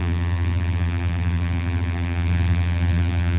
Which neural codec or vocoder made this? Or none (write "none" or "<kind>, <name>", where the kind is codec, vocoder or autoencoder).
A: vocoder, BigVGAN v2